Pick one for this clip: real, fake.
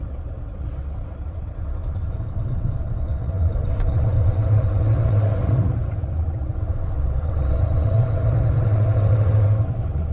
fake